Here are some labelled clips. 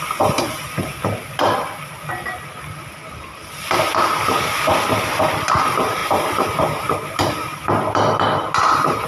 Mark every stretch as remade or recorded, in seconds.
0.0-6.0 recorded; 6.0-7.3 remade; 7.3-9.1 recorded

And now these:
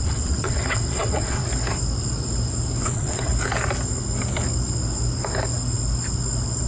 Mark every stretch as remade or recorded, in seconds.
0.0-1.4 remade; 1.4-2.8 recorded; 2.8-3.3 remade; 3.3-6.7 recorded

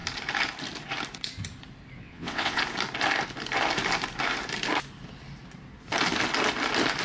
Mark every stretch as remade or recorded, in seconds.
0.0-2.0 recorded; 2.0-2.6 remade; 2.6-7.0 recorded

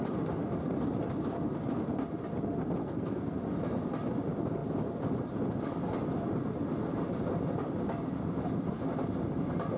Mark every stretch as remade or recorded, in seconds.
0.0-2.8 recorded; 2.8-3.4 remade; 3.4-9.8 recorded

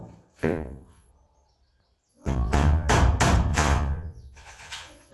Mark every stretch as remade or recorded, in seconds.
0.0-0.4 recorded; 0.4-1.1 remade; 1.1-2.1 recorded; 2.1-2.9 remade; 2.9-3.5 recorded; 3.5-5.1 remade

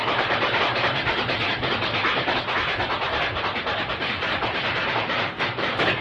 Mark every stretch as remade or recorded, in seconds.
0.0-2.4 remade; 2.4-3.3 recorded; 3.3-6.0 remade

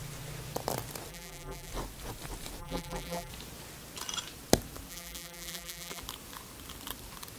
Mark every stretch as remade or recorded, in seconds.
0.0-1.1 recorded; 1.1-1.7 remade; 1.7-2.6 recorded; 2.6-3.3 remade; 3.3-4.9 recorded; 4.9-6.0 remade; 6.0-7.4 recorded